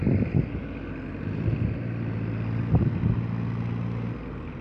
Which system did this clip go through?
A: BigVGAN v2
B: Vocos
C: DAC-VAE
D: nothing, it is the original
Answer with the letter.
D